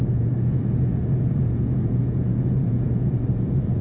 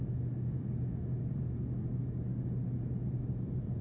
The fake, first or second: first